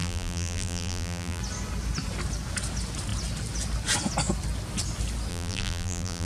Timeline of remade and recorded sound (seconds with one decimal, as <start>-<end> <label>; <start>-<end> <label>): 0.0-1.4 remade; 1.4-5.3 recorded; 5.3-6.3 remade